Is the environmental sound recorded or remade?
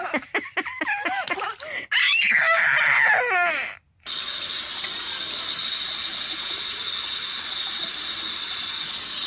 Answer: recorded